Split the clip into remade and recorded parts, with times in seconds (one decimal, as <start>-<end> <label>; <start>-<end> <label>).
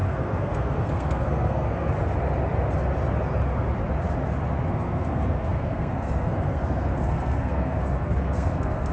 0.0-1.9 remade; 1.9-4.7 recorded; 4.7-8.9 remade